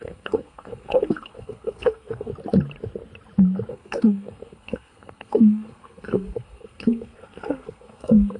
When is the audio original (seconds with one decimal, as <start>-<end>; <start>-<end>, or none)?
2.3-3.7